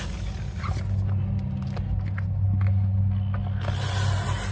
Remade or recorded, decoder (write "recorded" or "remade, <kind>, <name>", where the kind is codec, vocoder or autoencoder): recorded